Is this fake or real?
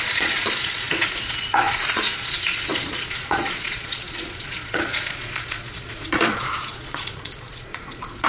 fake